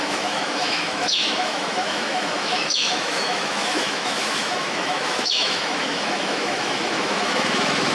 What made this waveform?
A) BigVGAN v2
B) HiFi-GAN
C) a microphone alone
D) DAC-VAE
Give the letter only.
D